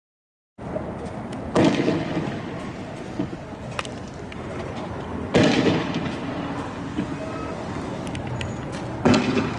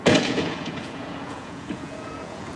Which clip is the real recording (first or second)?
first